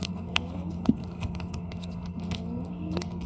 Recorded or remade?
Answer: remade